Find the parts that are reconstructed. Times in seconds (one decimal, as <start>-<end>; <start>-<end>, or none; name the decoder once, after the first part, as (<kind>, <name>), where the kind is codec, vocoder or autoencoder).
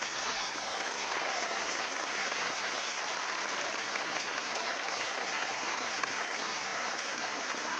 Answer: 0.0-3.0 (codec, SNAC); 3.8-7.8